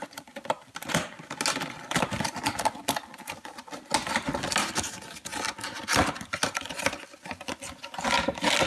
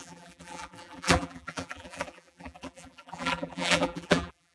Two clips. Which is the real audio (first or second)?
first